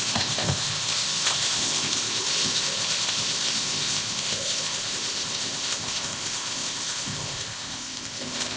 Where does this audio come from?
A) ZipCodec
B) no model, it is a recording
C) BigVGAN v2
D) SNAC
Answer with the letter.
A